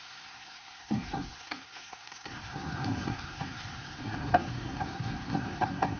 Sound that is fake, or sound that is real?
fake